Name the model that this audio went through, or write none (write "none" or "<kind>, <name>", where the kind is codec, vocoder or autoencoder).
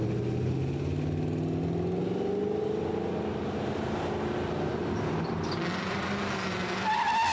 none